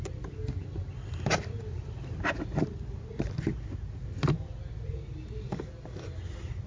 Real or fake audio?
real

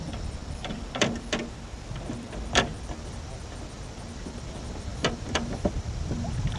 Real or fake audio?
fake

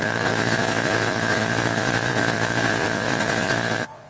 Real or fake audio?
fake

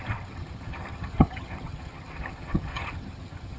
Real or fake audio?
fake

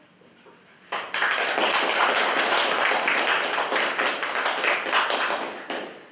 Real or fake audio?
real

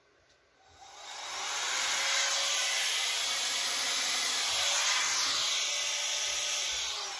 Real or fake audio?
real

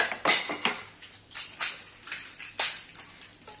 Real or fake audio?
real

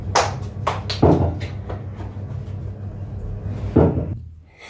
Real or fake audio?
real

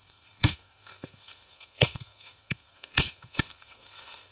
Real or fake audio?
fake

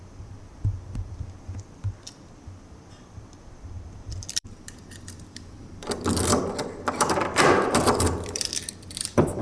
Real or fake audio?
fake